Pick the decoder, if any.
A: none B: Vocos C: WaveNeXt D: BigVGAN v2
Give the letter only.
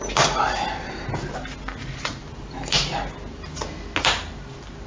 A